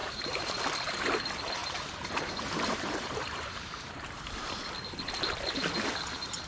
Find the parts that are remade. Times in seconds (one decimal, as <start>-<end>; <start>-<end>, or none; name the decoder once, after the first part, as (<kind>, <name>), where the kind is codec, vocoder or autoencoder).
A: 0.0-0.6 (vocoder, BigVGAN v2); 1.6-4.6